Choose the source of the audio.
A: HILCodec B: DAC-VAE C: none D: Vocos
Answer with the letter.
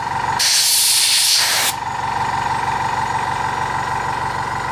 C